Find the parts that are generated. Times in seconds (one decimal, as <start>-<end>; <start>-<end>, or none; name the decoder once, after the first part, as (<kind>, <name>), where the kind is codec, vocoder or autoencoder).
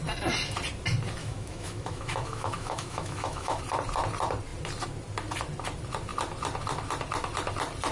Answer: 1.2-3.6 (autoencoder, DAC-VAE)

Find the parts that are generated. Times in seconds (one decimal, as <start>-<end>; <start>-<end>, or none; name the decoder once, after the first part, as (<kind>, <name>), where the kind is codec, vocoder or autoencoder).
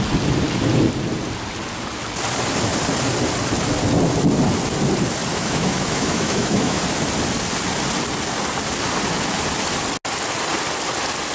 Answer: 5.3-6.8 (autoencoder, DAC-VAE)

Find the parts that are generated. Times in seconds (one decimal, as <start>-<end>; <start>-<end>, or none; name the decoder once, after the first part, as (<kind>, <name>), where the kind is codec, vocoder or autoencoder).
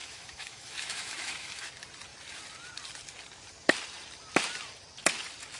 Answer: 0.0-1.7 (autoencoder, DAC-VAE)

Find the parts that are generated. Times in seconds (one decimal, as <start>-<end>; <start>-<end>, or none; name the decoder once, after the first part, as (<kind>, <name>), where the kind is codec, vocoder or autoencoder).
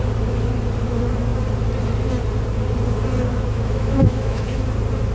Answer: 3.3-4.6 (autoencoder, DAC-VAE)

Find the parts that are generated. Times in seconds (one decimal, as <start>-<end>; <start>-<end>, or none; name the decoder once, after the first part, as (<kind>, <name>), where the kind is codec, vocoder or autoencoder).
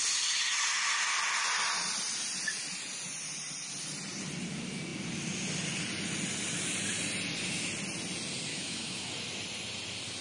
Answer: 8.5-9.1 (autoencoder, DAC-VAE)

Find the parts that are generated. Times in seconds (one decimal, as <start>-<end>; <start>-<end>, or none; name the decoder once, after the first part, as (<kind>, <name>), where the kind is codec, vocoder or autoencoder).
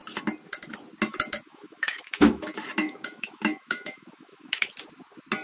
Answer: 1.5-4.7 (autoencoder, DAC-VAE)